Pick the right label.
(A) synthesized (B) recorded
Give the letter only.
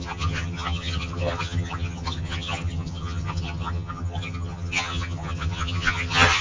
A